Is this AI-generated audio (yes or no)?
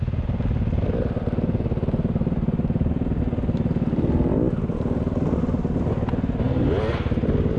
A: no